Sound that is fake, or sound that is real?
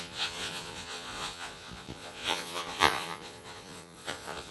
fake